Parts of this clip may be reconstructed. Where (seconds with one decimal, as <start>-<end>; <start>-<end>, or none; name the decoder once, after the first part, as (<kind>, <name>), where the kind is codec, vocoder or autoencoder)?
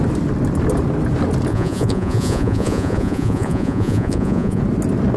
1.5-4.6 (vocoder, Vocos)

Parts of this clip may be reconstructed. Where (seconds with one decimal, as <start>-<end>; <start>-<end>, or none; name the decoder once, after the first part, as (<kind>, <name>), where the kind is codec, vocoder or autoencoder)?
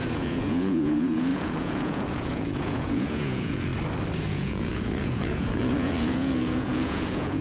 0.0-3.7 (vocoder, Vocos); 4.2-7.4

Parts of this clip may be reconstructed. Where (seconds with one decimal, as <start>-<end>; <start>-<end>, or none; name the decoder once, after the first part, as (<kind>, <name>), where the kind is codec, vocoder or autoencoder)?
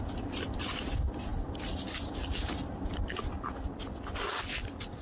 none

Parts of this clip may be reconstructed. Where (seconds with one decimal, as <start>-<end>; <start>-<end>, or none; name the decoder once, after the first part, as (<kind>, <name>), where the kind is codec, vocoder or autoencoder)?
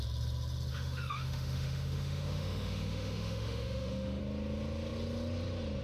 0.7-4.2 (autoencoder, DAC-VAE)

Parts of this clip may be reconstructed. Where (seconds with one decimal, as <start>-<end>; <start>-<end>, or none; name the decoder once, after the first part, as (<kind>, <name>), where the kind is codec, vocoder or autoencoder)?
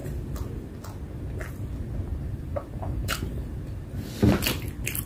2.1-3.6 (vocoder, BigVGAN v2)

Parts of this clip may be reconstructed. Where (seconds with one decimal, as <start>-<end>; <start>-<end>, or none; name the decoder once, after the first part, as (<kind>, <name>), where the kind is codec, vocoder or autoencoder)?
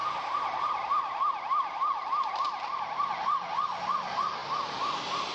0.0-2.3 (vocoder, BigVGAN v2)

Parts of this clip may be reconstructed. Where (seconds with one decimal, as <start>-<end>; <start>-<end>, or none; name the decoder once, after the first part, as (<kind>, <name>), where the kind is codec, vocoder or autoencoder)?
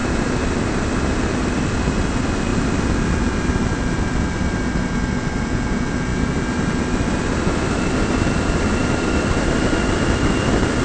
none